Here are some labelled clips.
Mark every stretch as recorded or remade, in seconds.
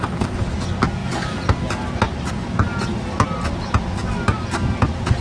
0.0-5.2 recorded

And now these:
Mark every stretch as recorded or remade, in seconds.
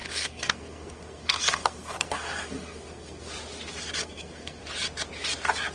0.0-3.3 remade; 3.3-4.0 recorded; 4.0-4.6 remade; 4.6-5.7 recorded